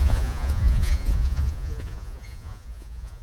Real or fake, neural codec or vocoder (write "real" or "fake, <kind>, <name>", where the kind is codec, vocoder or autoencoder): fake, vocoder, Vocos